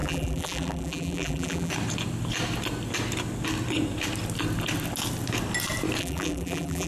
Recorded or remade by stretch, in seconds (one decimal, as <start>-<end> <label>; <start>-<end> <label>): 0.0-1.7 remade; 1.7-6.0 recorded; 6.0-6.9 remade